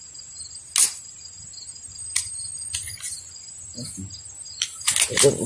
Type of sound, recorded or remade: recorded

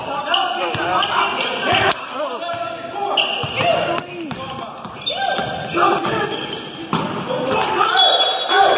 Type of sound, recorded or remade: recorded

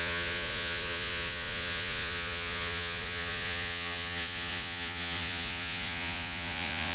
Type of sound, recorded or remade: remade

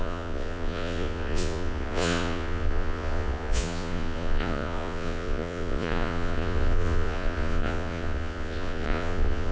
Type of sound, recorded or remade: remade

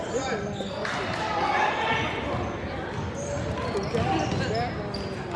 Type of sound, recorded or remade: recorded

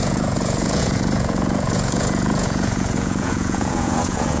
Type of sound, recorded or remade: remade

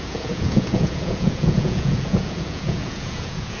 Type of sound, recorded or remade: remade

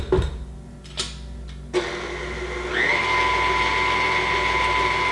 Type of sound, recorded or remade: recorded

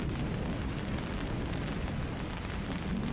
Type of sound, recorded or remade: recorded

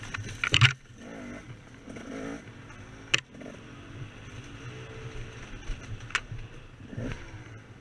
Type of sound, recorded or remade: recorded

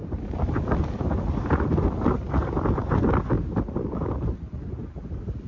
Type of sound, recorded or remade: recorded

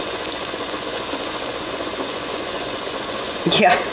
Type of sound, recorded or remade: remade